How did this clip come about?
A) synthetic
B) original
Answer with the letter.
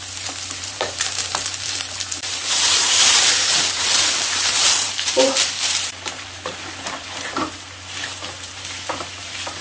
A